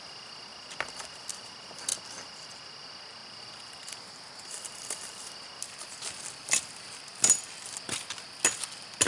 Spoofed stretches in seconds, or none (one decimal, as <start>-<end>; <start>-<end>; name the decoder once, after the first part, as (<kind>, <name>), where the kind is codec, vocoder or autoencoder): 3.2-5.1 (vocoder, BigVGAN v2)